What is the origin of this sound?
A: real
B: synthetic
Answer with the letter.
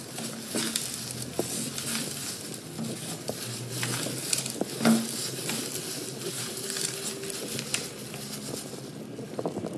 A